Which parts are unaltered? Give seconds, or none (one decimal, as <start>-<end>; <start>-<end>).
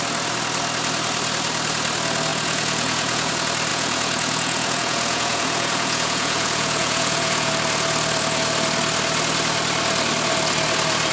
0.0-2.3; 3.3-3.7; 7.5-11.1